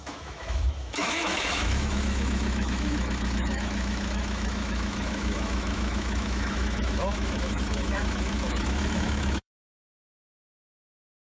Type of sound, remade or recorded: remade